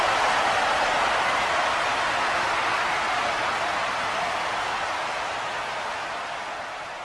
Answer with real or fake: real